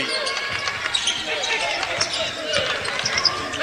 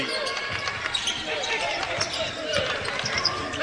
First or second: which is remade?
second